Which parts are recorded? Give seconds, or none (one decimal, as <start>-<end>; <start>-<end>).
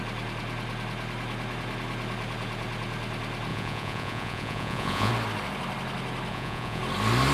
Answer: 0.0-3.5; 5.1-6.3; 6.8-7.3